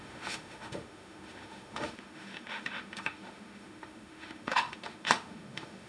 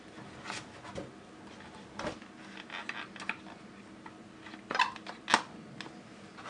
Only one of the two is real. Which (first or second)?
second